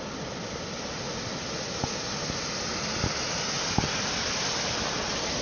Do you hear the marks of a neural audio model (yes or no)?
no